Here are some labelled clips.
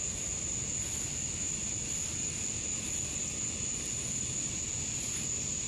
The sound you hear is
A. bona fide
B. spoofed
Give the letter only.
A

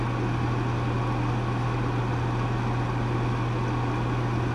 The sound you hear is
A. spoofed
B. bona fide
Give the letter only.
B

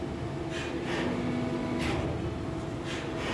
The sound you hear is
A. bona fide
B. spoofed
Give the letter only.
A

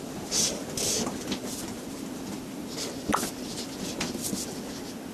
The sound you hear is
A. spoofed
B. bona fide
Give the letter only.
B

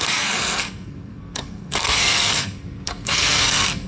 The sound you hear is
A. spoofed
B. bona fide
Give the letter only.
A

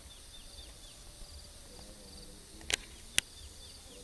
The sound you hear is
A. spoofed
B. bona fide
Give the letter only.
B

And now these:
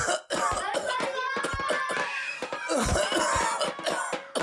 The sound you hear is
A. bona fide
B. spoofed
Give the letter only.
A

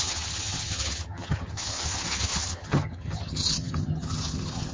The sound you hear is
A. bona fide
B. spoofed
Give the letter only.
B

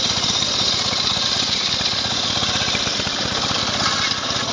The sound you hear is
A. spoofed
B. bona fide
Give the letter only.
B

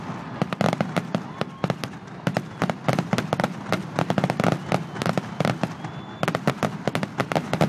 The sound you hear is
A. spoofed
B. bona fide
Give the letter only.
A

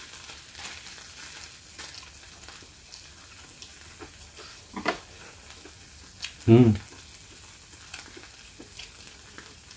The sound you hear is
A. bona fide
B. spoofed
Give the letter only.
A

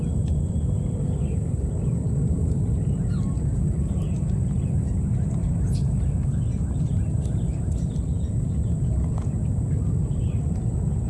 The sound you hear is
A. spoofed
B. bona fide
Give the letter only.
B